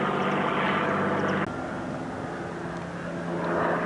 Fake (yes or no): no